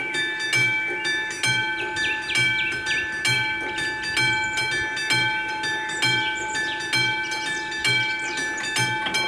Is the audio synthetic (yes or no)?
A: no